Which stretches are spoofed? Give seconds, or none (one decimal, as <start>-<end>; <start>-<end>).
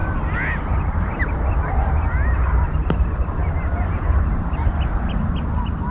none